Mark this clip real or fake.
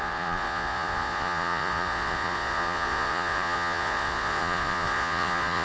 fake